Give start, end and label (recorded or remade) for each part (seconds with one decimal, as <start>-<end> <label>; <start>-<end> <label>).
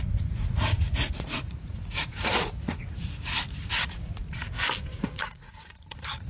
0.0-4.2 remade; 4.2-4.9 recorded; 4.9-6.3 remade